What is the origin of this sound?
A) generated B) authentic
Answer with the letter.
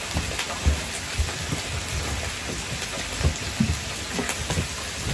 B